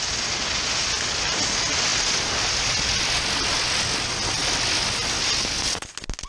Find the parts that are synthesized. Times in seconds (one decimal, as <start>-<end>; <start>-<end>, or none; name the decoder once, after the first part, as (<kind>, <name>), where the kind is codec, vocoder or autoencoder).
none